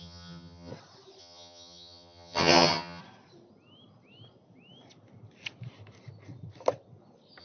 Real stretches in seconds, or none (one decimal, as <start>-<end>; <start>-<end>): 0.7-1.2; 3.0-7.4